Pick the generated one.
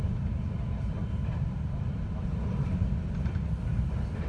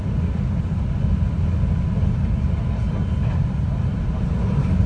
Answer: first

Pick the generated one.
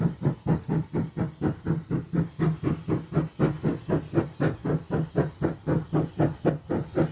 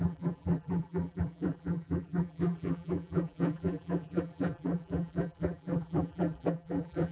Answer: second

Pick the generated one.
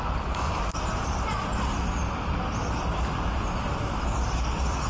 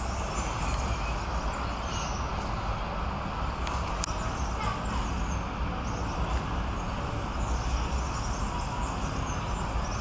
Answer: first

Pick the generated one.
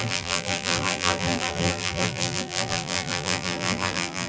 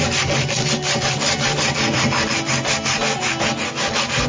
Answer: first